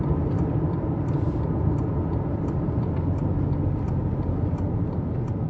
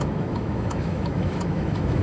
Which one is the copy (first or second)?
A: second